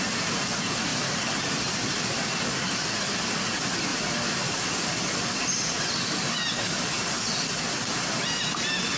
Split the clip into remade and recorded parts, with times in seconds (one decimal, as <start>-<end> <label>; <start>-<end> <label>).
0.0-9.0 recorded

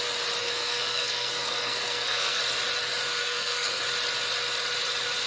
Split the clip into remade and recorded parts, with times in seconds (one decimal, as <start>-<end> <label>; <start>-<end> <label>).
0.0-0.4 recorded; 0.4-2.4 remade; 2.4-3.2 recorded; 3.2-3.8 remade; 3.8-5.3 recorded

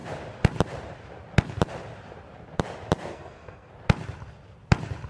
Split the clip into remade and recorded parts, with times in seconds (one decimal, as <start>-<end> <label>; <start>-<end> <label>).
0.0-3.1 recorded; 3.1-3.7 remade; 3.7-5.1 recorded

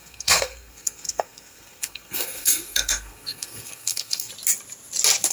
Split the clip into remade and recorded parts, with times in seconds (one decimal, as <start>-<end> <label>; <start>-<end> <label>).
0.0-4.3 remade; 4.3-5.3 recorded